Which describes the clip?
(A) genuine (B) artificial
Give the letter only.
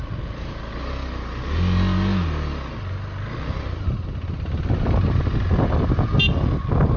A